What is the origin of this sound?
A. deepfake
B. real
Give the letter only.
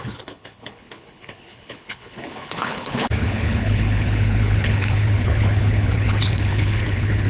A